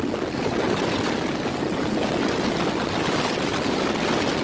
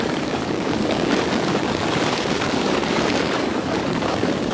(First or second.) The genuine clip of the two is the first